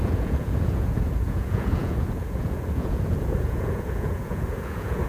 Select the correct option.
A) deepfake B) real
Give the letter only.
A